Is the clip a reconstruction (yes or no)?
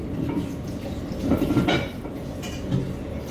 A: no